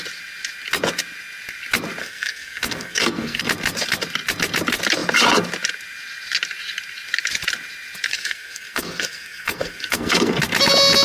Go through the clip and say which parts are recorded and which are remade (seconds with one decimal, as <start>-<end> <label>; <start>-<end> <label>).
0.0-2.0 recorded; 2.0-3.4 remade; 3.4-8.1 recorded; 8.1-10.4 remade; 10.4-11.0 recorded